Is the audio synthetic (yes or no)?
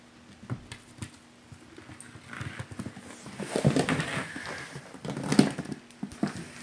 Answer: no